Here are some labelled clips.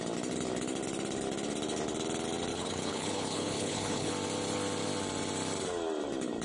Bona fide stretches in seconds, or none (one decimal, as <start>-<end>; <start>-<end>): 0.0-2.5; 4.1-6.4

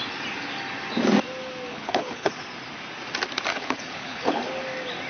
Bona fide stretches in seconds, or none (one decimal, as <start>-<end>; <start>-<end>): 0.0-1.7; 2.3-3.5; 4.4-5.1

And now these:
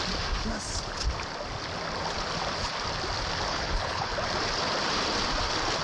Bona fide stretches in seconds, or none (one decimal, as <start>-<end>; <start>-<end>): 0.0-3.5; 4.1-5.8

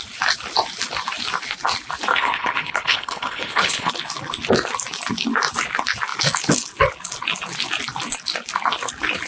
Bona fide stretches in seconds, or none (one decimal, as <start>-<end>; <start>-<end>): 0.0-2.1; 3.9-9.3